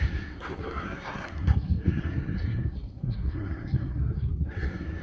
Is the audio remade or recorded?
remade